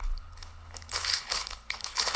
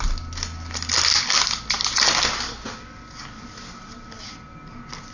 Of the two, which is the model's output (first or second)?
first